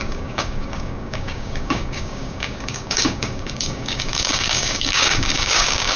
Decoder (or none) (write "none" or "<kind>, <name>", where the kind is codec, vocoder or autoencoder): codec, DAC